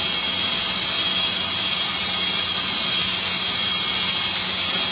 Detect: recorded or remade recorded